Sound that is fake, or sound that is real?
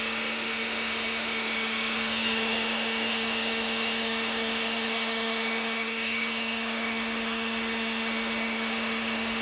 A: fake